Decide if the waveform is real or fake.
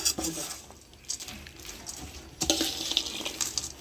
real